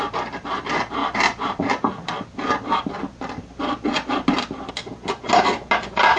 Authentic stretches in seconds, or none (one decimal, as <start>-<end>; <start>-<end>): 0.0-6.2